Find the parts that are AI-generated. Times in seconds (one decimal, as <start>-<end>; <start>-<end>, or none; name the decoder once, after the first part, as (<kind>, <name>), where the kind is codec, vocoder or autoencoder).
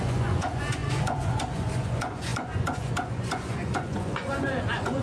0.0-5.0 (vocoder, Vocos)